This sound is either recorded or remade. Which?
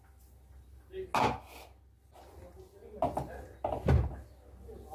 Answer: recorded